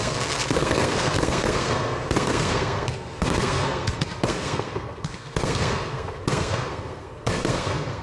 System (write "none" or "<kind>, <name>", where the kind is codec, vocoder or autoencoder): codec, SNAC